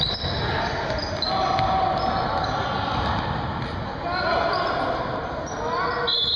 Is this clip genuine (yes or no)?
yes